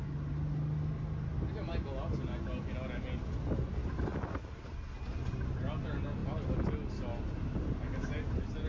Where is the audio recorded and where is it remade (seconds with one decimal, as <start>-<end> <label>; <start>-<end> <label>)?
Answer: 0.0-8.7 recorded